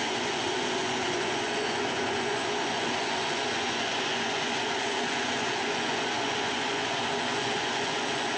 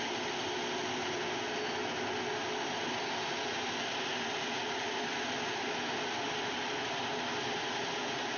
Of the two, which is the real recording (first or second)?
second